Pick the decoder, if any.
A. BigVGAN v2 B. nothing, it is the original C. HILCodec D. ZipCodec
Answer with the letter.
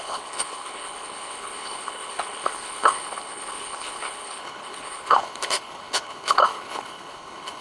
C